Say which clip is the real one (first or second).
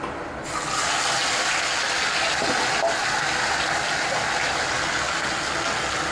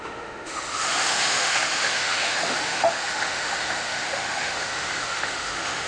first